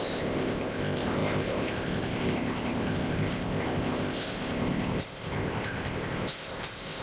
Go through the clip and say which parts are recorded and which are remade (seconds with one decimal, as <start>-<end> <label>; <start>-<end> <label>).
0.0-7.0 remade